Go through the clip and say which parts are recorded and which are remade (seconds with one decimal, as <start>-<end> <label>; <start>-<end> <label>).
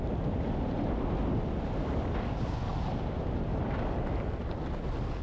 0.0-5.2 recorded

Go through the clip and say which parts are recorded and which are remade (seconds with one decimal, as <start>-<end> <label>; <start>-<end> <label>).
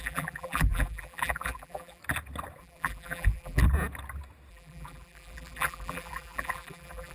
0.0-2.0 remade; 2.0-2.6 recorded; 2.6-3.6 remade; 3.6-4.5 recorded; 4.5-7.1 remade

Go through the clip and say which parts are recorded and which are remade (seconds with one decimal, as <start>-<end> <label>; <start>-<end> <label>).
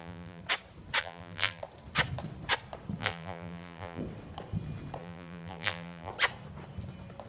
0.0-0.4 remade; 0.4-1.0 recorded; 1.0-1.6 remade; 1.6-3.0 recorded; 3.0-4.0 remade; 4.0-5.0 recorded; 5.0-6.1 remade; 6.1-7.3 recorded